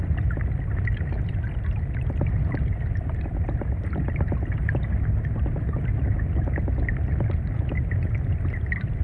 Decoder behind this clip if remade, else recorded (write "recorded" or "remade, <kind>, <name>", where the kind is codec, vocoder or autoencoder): recorded